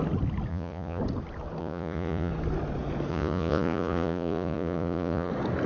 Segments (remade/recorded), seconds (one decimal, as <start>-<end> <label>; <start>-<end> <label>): 0.0-0.5 recorded; 0.5-1.0 remade; 1.0-1.6 recorded; 1.6-2.3 remade; 2.3-3.1 recorded; 3.1-5.3 remade; 5.3-5.7 recorded

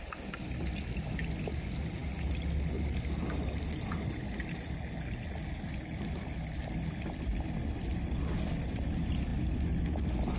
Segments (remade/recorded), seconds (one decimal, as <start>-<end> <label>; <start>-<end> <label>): 0.0-10.4 recorded